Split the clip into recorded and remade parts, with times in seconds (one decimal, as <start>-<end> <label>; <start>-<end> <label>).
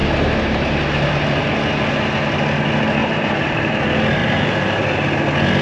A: 0.0-1.1 remade; 1.1-3.0 recorded; 3.0-3.8 remade; 3.8-4.2 recorded; 4.2-4.9 remade; 4.9-5.6 recorded